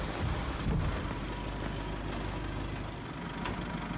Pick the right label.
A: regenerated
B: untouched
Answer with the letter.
B